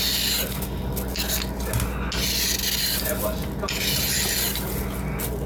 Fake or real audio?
real